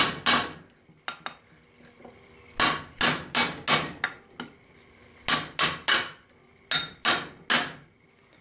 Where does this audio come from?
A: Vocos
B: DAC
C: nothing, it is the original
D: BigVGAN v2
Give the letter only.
C